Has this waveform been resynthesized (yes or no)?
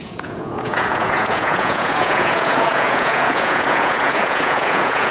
yes